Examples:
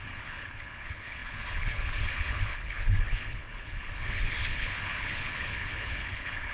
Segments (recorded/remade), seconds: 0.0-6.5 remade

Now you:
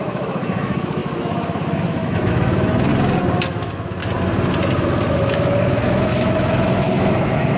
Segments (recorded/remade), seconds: 0.0-2.9 remade; 2.9-3.5 recorded; 3.5-4.0 remade; 4.0-5.1 recorded; 5.1-7.6 remade

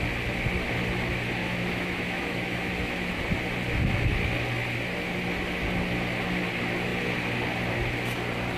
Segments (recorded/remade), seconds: 0.0-1.4 recorded; 1.4-3.1 remade; 3.1-8.6 recorded

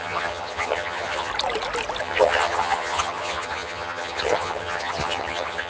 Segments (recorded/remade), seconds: 0.0-1.3 remade; 1.3-2.0 recorded; 2.0-5.7 remade